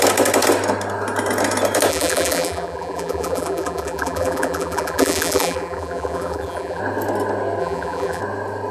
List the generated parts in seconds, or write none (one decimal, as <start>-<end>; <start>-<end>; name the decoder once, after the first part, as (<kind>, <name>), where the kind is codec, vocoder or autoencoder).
1.9-6.8 (vocoder, BigVGAN v2); 7.6-8.2